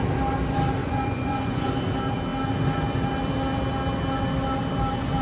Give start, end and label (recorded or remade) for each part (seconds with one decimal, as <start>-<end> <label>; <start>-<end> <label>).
0.0-0.8 recorded; 0.8-1.7 remade; 1.7-5.2 recorded